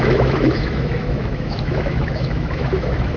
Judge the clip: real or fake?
fake